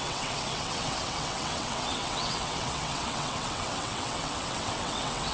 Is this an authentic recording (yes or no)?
no